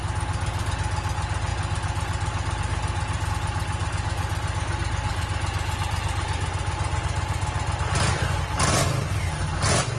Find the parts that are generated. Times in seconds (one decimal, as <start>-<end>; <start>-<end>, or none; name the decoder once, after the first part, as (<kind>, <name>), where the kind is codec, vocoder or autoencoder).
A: none